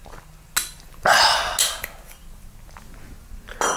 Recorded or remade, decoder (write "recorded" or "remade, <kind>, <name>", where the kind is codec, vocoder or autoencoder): recorded